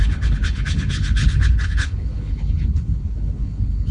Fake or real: fake